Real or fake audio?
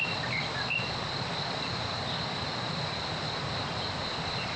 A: real